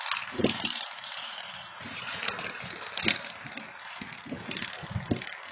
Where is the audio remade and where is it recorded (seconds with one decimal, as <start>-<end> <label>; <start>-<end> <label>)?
0.0-0.4 recorded; 0.4-2.7 remade; 2.7-5.5 recorded